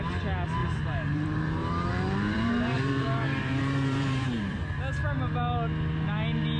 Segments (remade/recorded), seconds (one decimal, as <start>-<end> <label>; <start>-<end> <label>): 0.0-0.6 recorded; 0.6-4.6 remade; 4.6-6.6 recorded